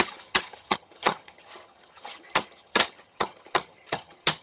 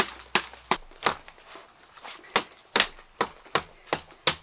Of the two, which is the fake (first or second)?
first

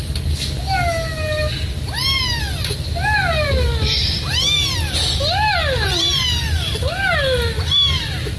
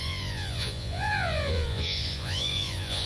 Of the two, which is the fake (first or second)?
second